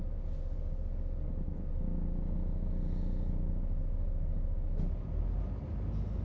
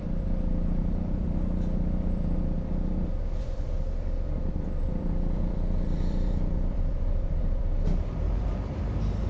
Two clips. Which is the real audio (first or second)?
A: first